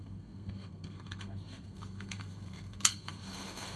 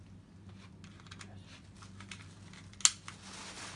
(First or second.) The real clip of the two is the second